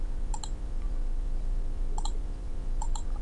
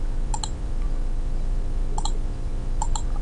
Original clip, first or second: second